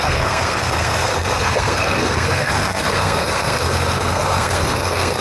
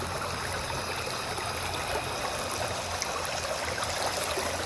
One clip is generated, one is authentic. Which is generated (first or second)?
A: first